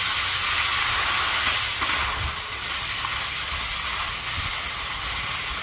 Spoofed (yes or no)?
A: no